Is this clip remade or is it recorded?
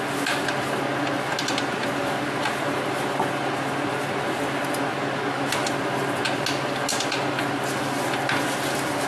recorded